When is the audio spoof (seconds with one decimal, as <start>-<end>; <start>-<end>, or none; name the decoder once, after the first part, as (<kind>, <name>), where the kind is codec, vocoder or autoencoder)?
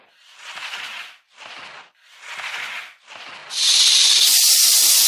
none